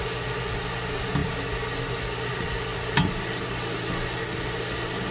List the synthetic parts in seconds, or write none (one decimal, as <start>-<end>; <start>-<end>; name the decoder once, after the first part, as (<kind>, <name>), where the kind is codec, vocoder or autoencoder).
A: none